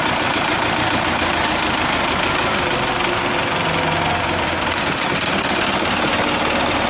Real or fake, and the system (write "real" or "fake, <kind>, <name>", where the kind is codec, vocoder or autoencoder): real